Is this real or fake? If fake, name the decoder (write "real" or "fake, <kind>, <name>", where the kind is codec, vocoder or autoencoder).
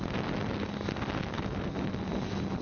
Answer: real